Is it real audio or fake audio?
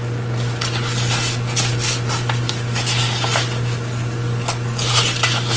real